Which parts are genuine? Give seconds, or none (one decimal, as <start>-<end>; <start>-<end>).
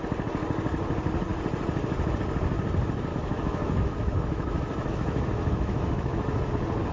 0.0-3.1; 6.5-6.9